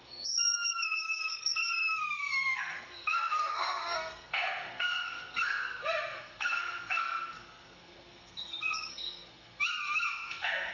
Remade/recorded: remade